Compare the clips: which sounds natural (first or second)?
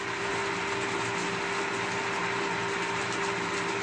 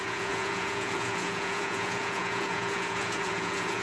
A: first